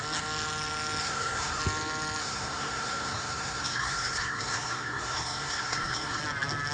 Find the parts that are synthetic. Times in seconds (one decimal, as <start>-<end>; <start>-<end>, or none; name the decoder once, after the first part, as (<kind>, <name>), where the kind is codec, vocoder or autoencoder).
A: 1.0-1.6 (codec, SNAC); 2.2-6.2